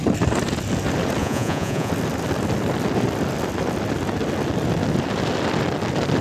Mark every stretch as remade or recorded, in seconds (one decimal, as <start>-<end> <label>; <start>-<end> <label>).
0.0-1.2 recorded; 1.2-1.9 remade; 1.9-6.2 recorded